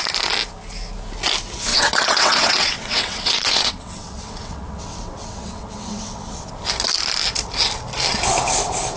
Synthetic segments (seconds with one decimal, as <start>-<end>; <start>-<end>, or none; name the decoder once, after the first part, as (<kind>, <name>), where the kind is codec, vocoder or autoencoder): 1.7-6.5 (vocoder, WaveNeXt)